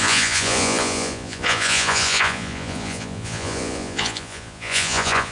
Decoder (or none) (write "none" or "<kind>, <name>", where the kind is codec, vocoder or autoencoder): vocoder, Vocos